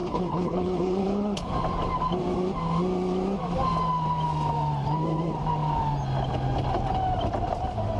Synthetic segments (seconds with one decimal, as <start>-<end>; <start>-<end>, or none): 0.0-1.5